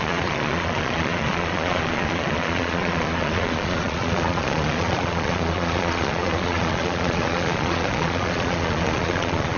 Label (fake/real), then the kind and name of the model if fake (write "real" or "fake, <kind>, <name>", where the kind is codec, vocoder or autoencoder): fake, vocoder, Vocos